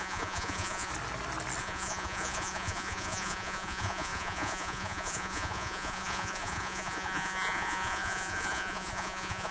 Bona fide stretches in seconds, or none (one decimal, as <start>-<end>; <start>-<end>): 0.9-1.6